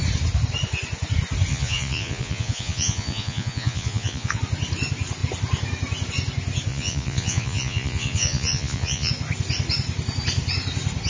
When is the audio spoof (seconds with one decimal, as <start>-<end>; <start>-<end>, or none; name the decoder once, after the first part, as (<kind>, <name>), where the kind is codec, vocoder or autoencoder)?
1.5-4.4 (vocoder, Vocos); 6.7-9.1